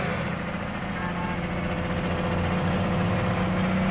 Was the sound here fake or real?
real